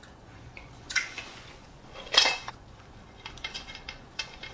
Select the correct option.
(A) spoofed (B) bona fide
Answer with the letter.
A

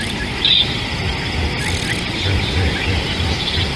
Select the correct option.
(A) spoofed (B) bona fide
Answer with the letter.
B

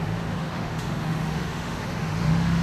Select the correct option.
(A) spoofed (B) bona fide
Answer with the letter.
A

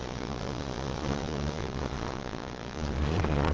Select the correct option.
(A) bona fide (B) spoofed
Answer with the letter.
B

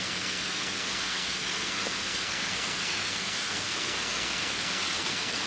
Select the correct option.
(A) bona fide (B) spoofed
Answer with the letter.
B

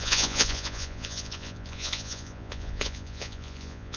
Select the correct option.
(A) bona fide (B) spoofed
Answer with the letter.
B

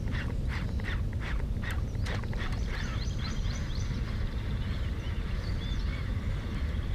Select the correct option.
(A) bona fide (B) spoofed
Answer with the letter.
B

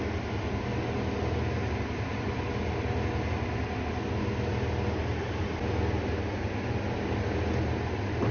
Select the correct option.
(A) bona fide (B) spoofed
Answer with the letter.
A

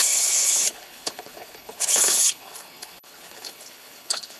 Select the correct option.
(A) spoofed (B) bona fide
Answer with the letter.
A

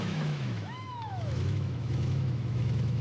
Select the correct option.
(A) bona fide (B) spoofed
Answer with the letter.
B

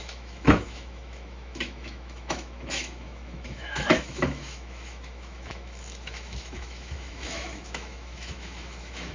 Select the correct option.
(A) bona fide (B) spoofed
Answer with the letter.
B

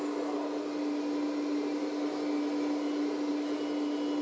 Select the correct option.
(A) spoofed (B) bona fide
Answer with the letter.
B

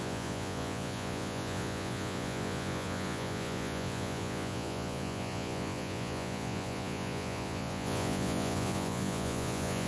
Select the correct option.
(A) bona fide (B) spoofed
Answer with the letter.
B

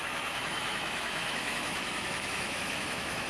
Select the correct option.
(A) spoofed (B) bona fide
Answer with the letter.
A